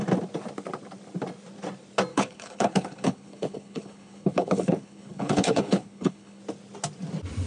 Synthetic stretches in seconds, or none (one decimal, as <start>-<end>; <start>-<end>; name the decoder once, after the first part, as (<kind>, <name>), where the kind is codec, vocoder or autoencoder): 2.1-6.4 (codec, HILCodec)